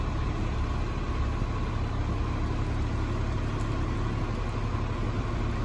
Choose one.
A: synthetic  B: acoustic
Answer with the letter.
B